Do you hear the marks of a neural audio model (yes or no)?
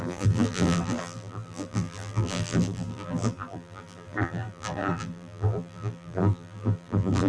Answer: yes